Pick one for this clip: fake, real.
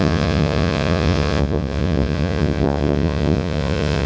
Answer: fake